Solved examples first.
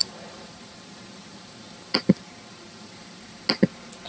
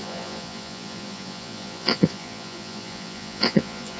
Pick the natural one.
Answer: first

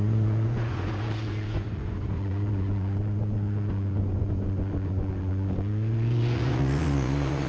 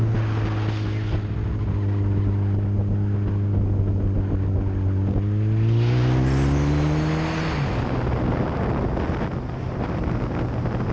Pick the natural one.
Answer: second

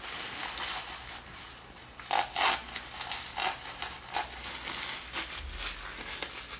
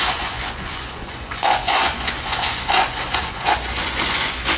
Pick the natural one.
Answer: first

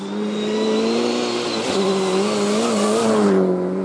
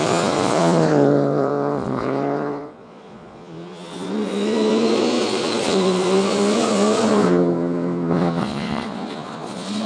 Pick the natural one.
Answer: first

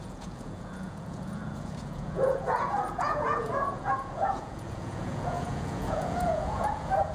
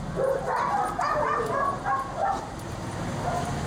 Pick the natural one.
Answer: second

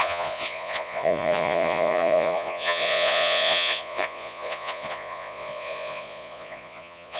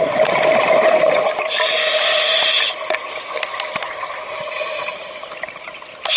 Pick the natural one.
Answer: second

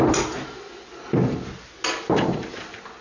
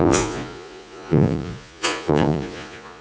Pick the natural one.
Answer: first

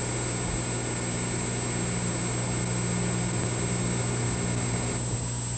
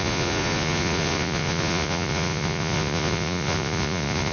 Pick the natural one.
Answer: first